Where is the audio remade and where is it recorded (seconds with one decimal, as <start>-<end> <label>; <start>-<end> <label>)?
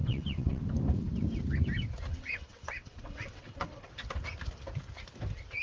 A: 0.0-0.6 remade; 0.6-2.1 recorded; 2.1-3.9 remade; 3.9-5.6 recorded